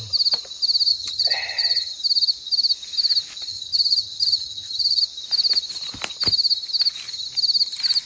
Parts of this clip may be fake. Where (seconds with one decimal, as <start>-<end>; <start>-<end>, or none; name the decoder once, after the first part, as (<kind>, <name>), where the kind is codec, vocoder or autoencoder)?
0.9-1.9 (vocoder, HiFi-GAN); 3.5-5.0

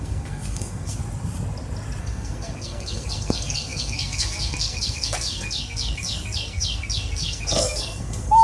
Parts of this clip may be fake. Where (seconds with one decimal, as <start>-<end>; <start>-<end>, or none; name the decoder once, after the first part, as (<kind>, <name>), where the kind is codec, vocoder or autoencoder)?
0.0-1.0 (codec, SNAC); 2.0-8.4

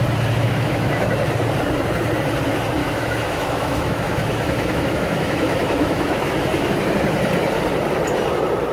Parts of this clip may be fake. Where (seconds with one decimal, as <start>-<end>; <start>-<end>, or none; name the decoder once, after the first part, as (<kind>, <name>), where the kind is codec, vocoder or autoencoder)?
0.4-1.1 (autoencoder, DAC-VAE); 2.8-6.7

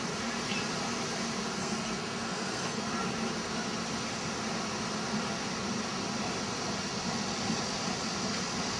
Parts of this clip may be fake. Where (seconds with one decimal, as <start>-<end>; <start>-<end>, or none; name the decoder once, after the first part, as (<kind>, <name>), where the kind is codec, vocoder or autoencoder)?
1.6-2.9 (codec, SNAC)

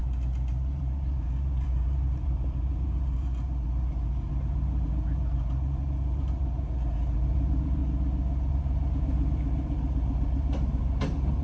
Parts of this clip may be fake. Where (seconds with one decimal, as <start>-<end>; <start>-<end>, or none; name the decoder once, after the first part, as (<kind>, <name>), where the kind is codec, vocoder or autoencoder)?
0.5-7.8 (vocoder, BigVGAN v2); 8.5-11.4

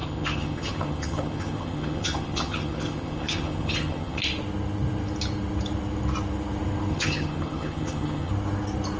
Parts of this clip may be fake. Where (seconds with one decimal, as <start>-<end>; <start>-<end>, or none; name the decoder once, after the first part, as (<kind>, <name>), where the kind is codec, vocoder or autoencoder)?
0.0-4.2 (vocoder, HiFi-GAN); 6.9-8.3

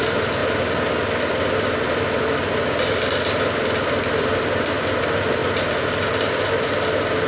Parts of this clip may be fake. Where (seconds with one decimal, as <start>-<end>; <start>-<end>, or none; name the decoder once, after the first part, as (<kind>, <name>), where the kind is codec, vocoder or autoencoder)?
none

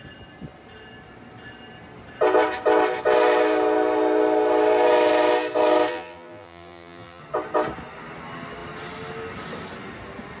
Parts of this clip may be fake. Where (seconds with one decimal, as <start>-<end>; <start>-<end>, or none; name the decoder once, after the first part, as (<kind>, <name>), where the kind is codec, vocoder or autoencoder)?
5.9-7.2 (vocoder, BigVGAN v2)